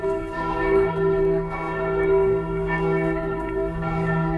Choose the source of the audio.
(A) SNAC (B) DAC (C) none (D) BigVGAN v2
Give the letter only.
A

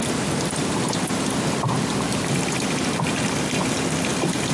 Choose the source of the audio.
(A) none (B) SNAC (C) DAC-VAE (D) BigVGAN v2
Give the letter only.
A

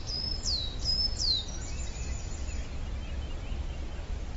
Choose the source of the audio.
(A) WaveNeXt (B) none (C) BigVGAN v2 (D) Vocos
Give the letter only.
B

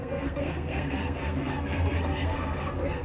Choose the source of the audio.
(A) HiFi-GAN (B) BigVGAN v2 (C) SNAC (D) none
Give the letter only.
C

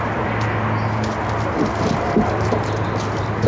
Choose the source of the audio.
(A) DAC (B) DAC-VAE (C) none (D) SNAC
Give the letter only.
C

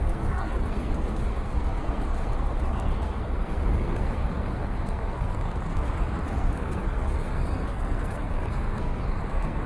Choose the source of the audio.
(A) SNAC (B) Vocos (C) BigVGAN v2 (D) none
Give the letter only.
A